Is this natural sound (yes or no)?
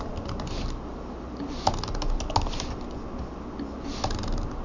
yes